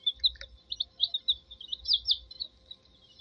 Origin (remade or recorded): recorded